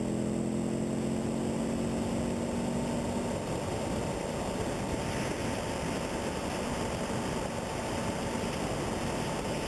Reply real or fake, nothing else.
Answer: real